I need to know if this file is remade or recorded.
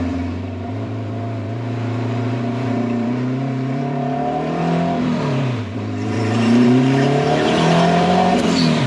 remade